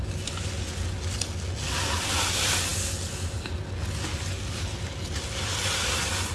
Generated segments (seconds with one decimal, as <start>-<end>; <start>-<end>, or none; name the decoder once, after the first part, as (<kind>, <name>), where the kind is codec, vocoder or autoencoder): none